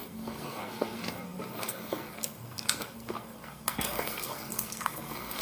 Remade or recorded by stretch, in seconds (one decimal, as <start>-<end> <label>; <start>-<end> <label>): 0.0-5.4 remade